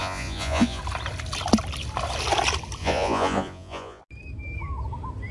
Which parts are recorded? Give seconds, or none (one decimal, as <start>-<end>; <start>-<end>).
0.8-2.8; 4.0-5.3